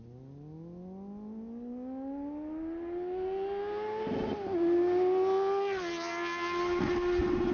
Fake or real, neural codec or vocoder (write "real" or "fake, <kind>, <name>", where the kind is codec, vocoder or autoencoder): real